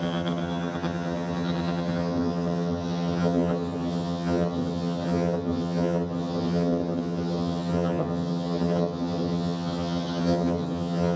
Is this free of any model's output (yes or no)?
no